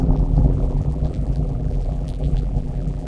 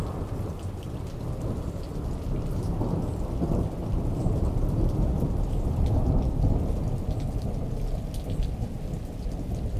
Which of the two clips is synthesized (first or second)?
first